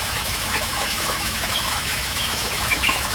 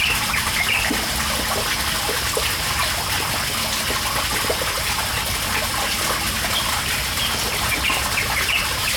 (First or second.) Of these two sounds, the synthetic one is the first